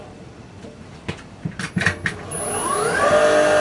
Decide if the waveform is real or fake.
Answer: real